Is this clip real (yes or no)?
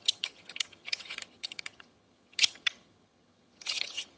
no